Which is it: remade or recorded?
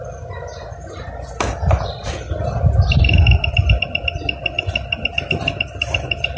recorded